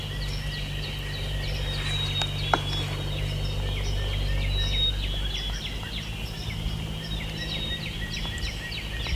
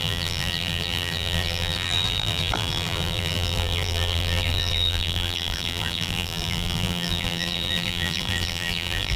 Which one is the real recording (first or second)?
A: first